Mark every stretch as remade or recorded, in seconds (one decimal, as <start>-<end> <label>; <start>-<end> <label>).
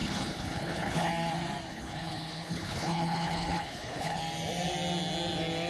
0.0-1.1 remade; 1.1-1.7 recorded; 1.7-4.2 remade; 4.2-5.7 recorded